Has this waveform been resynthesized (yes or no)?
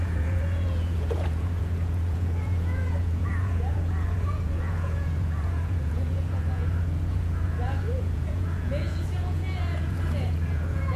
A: yes